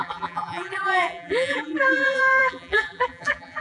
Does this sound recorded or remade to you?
remade